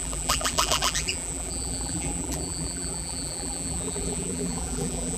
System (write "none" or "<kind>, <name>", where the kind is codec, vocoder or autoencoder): vocoder, BigVGAN v2